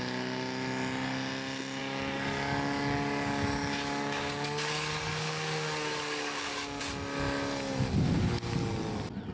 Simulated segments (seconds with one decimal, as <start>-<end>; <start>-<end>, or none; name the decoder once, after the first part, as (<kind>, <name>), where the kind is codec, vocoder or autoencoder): 1.8-6.8 (codec, DAC)